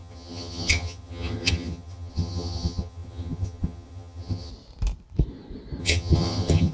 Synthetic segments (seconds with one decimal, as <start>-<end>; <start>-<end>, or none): 0.0-4.5; 5.8-6.7